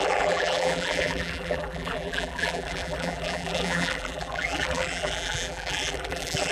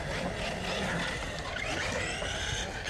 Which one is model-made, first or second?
first